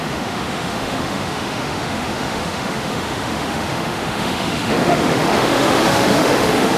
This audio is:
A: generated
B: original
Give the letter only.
A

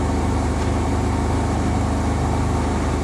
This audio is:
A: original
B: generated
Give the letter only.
A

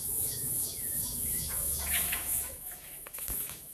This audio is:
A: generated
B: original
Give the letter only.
A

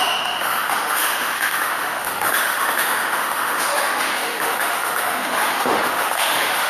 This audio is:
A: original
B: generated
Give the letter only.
B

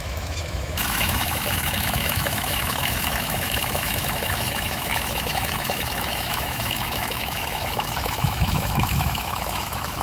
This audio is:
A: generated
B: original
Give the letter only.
A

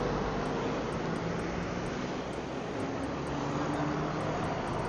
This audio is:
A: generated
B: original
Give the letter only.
B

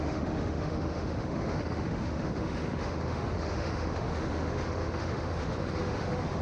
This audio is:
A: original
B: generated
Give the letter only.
B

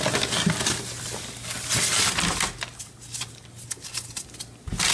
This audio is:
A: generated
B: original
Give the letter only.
B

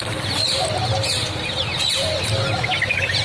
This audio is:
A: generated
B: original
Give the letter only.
B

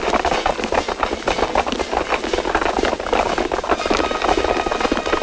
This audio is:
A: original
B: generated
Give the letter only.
A